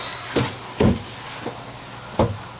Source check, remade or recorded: recorded